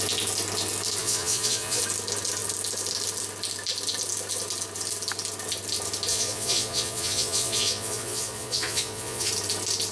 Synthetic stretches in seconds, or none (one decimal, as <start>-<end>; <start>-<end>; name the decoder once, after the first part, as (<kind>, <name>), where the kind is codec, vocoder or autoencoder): 1.0-1.8 (vocoder, Vocos); 6.1-9.3